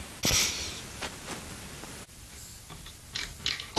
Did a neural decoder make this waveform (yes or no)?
no